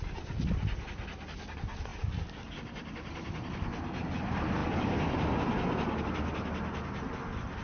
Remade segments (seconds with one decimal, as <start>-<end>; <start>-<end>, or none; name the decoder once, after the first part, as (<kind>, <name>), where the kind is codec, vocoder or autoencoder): none